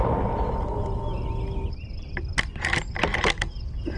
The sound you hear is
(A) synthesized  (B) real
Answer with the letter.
B